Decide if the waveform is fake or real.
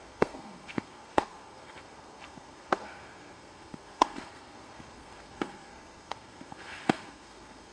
fake